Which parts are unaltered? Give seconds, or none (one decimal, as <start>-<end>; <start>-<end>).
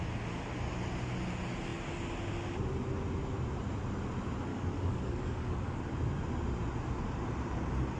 0.0-4.5; 5.8-8.0